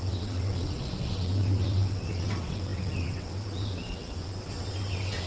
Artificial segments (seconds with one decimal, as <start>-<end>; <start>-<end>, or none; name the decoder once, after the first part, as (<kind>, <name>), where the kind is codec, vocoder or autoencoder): 0.0-5.3 (vocoder, WaveNeXt)